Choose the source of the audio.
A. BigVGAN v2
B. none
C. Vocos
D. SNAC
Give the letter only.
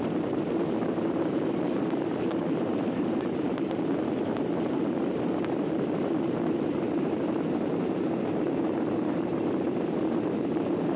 A